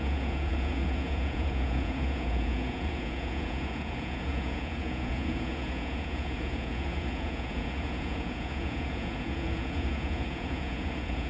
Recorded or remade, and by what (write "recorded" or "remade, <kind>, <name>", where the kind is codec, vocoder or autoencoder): remade, vocoder, Vocos